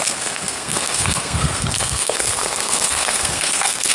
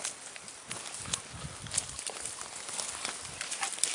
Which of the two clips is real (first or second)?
second